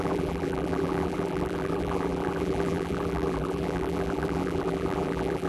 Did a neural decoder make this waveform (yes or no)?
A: yes